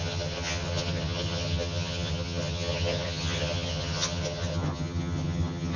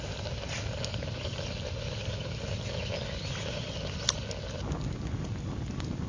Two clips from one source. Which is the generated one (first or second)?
first